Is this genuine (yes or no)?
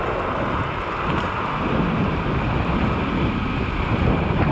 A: no